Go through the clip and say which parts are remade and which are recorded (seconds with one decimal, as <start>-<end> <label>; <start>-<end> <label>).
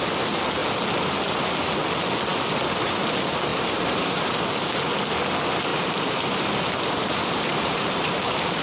0.0-3.5 recorded; 3.5-4.6 remade; 4.6-5.7 recorded; 5.7-8.6 remade